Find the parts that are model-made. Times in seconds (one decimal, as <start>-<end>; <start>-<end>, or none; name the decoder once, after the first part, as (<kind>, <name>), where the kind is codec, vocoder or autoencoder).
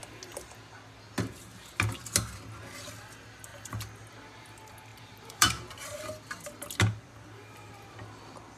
4.9-6.0 (vocoder, BigVGAN v2)